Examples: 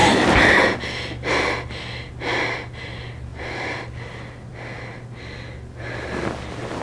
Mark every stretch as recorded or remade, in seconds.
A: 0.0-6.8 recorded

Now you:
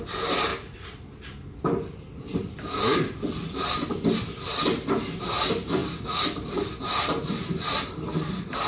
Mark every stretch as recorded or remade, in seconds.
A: 0.0-0.5 remade; 0.5-5.2 recorded; 5.2-5.8 remade; 5.8-6.8 recorded; 6.8-8.7 remade

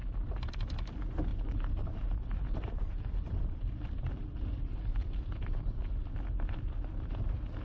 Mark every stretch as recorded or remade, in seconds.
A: 0.0-1.3 recorded; 1.3-5.8 remade; 5.8-7.6 recorded

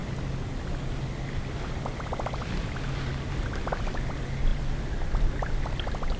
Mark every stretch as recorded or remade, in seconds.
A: 0.0-6.2 recorded